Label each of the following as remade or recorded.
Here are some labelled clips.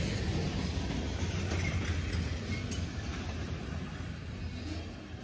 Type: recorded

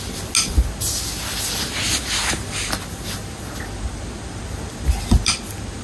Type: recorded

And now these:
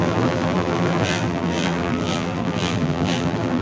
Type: remade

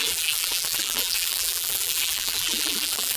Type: remade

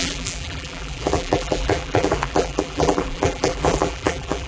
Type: remade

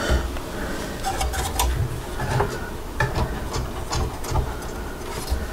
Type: recorded